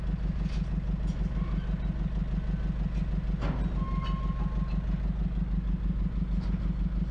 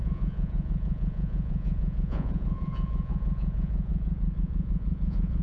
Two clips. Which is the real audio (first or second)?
first